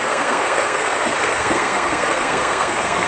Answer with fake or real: fake